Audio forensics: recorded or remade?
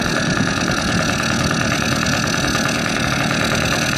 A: recorded